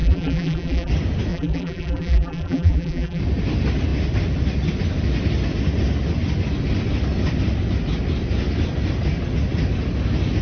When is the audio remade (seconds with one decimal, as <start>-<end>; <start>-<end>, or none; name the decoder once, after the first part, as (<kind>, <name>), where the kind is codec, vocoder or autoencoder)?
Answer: 0.0-0.9 (vocoder, BigVGAN v2); 1.3-3.2